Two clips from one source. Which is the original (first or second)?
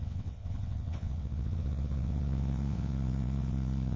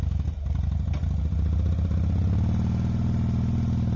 second